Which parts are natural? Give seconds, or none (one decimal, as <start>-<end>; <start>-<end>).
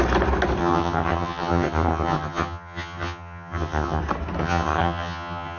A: 0.0-0.6; 4.0-4.4